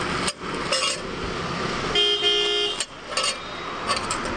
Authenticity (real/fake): real